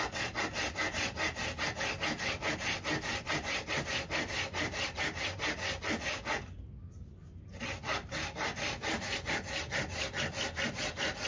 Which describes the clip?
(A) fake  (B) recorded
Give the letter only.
B